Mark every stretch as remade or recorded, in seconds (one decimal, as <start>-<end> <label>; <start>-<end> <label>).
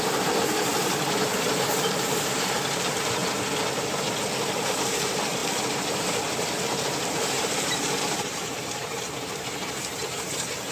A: 0.0-0.7 remade; 0.7-1.5 recorded; 1.5-3.2 remade; 3.2-4.8 recorded; 4.8-10.7 remade